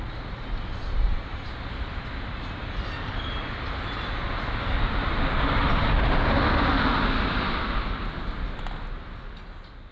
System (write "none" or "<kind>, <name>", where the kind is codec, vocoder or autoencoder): none